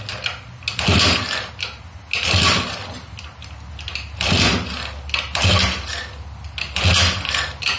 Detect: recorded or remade recorded